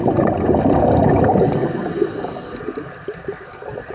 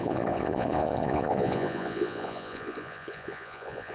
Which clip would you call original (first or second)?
first